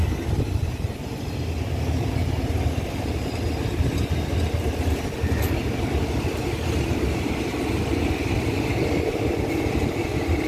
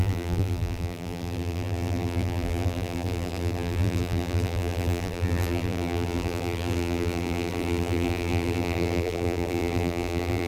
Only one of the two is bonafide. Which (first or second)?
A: first